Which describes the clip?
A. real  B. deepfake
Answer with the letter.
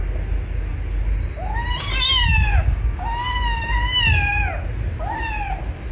A